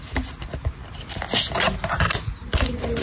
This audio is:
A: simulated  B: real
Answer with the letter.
B